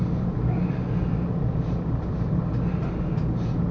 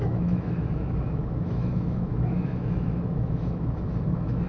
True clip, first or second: first